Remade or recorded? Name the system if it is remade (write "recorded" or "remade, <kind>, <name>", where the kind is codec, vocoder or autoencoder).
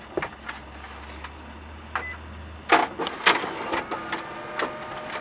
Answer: recorded